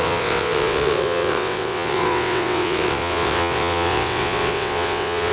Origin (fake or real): fake